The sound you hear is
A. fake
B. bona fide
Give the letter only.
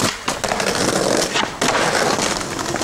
B